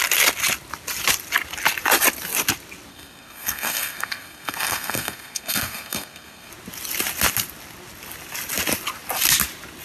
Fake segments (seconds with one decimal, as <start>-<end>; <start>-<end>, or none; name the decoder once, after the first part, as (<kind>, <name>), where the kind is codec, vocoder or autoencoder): 2.9-6.5 (codec, SNAC)

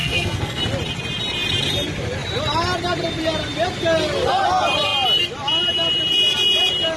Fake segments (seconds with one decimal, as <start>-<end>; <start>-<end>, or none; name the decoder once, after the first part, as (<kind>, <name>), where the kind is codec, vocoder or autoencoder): 0.0-0.6 (codec, SNAC)

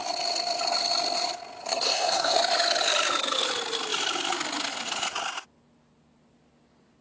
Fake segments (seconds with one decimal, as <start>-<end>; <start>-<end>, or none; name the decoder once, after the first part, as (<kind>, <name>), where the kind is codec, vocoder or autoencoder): 1.6-2.4 (codec, SNAC)

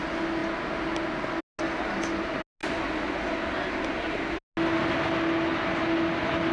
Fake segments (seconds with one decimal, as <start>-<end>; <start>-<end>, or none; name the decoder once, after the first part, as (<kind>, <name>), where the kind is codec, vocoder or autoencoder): none